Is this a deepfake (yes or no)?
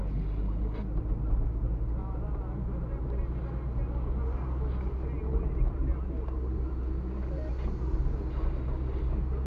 no